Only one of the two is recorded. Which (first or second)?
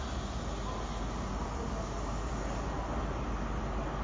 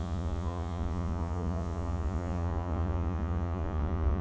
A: first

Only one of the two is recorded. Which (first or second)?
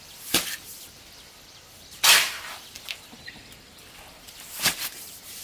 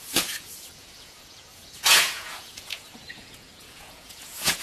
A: first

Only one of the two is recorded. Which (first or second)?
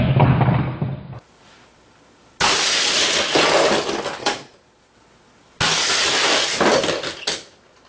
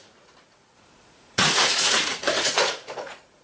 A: first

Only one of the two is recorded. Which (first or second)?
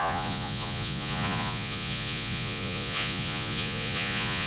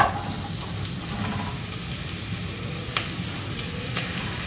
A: second